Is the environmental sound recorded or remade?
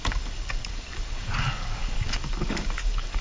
remade